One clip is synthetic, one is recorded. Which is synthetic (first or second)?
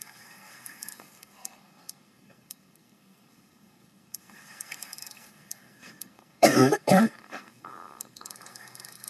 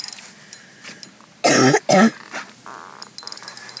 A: first